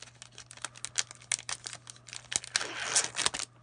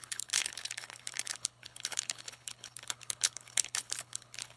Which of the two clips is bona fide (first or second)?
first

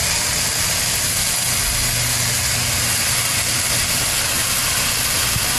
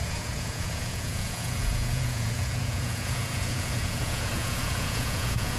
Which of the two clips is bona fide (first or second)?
first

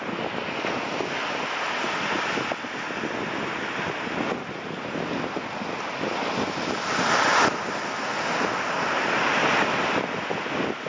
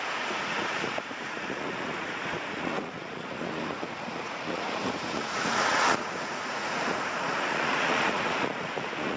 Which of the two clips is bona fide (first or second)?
first